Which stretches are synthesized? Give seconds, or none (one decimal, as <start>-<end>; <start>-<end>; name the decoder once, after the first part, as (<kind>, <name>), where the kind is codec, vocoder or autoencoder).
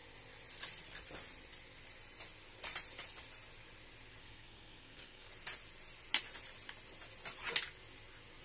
4.2-5.3 (codec, SNAC)